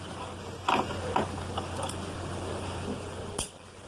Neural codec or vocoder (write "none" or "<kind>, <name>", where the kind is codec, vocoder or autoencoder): none